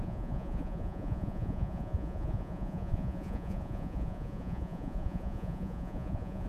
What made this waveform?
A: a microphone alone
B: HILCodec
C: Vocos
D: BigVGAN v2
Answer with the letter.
C